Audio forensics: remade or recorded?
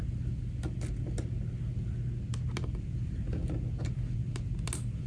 recorded